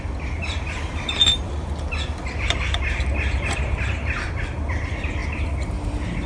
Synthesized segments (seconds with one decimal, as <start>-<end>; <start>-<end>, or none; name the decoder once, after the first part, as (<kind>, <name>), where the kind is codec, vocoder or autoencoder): 0.0-5.2 (vocoder, BigVGAN v2)